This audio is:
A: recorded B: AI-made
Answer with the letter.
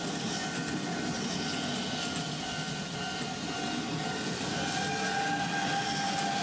A